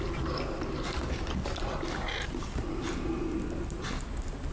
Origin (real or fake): real